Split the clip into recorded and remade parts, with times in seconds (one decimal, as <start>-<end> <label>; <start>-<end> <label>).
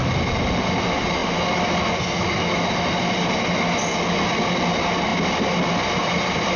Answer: 0.0-6.6 recorded